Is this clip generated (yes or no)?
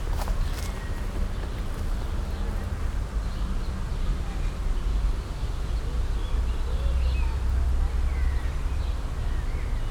no